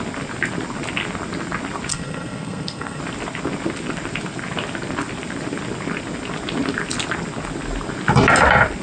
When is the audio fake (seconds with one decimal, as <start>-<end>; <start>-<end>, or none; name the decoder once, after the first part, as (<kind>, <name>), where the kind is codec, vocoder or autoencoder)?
1.9-3.0 (codec, SNAC)

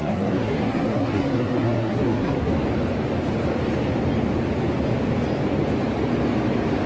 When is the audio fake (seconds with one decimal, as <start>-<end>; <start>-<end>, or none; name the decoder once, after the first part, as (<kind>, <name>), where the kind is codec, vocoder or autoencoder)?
0.0-2.5 (codec, SNAC)

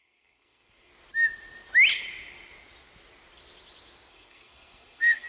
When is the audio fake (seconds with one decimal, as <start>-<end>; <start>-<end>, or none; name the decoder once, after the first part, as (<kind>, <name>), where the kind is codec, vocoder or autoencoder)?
0.0-0.9 (codec, SNAC); 4.1-5.3